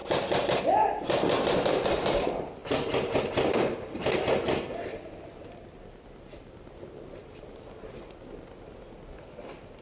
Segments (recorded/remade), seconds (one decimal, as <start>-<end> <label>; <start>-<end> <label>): 0.0-9.8 recorded